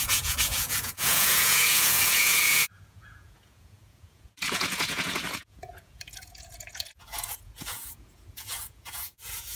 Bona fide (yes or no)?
no